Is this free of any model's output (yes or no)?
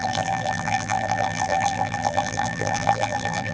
no